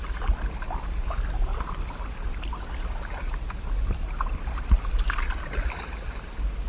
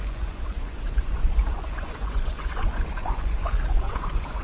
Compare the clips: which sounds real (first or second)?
first